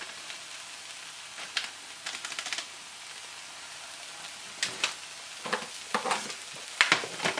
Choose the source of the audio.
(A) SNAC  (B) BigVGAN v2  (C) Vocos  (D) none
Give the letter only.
D